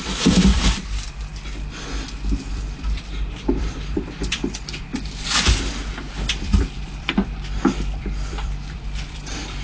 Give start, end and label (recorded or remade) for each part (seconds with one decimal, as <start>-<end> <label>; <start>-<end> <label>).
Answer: 0.0-1.3 remade; 1.3-2.5 recorded; 2.5-9.6 remade